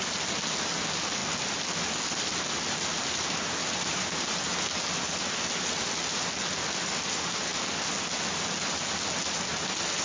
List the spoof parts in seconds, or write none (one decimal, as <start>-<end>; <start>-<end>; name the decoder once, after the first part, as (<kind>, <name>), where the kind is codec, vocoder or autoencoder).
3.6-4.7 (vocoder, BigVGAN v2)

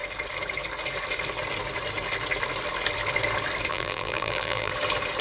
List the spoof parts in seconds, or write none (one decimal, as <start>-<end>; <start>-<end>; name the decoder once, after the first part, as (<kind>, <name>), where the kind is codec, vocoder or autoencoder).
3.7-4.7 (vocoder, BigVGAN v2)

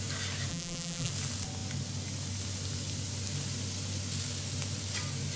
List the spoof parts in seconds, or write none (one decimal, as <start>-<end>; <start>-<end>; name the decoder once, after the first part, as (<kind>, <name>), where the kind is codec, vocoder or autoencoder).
0.5-1.1 (vocoder, BigVGAN v2)

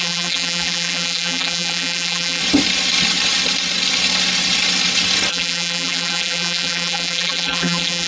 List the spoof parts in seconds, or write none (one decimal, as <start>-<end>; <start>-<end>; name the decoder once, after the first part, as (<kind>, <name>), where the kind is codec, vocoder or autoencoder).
0.0-2.4 (vocoder, BigVGAN v2); 5.3-8.1